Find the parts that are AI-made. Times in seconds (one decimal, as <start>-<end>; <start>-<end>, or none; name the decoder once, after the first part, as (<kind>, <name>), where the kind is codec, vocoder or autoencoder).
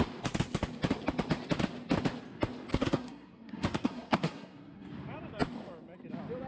2.7-4.9 (codec, SNAC)